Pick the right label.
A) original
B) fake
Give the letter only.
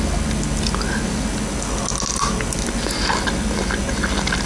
A